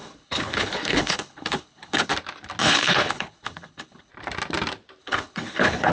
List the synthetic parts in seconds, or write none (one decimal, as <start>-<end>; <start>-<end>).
0.0-2.1; 2.6-4.1; 5.0-5.9